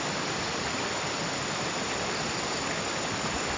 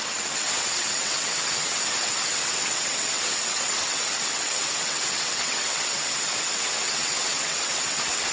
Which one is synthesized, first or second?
second